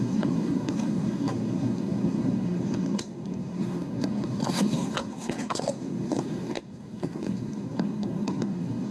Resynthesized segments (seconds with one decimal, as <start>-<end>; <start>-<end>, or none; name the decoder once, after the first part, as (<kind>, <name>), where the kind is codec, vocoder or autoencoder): 0.0-8.9 (codec, SNAC)